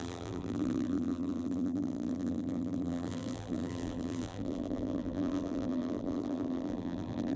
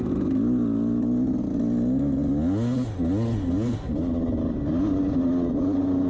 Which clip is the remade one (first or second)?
first